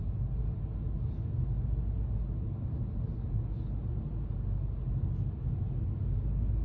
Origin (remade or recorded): recorded